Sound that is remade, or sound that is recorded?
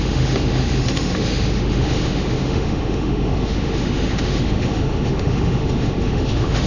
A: remade